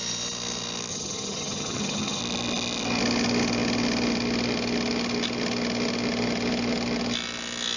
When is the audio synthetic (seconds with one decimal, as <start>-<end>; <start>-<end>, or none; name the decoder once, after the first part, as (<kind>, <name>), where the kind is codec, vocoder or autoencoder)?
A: 0.9-2.2 (vocoder, HiFi-GAN)